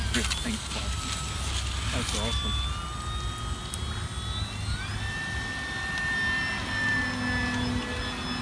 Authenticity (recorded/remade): recorded